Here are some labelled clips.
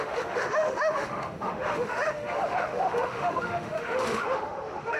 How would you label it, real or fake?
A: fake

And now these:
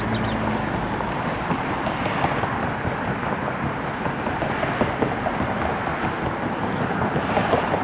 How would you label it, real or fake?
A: real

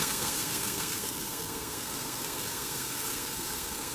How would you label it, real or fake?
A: fake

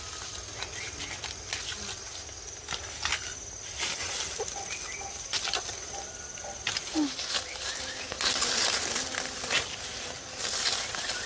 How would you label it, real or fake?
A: real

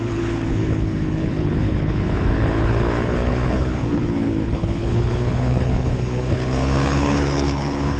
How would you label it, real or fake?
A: fake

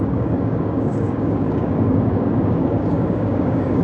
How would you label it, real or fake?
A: fake